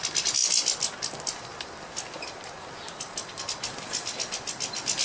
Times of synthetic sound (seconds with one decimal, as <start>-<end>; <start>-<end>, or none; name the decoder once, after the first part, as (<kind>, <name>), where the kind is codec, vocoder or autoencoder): none